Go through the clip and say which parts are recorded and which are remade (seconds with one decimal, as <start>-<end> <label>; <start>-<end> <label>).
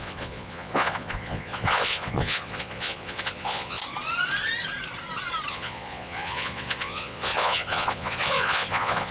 0.0-3.8 remade; 3.8-5.5 recorded; 5.5-9.1 remade